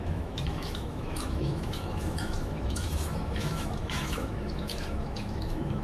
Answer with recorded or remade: remade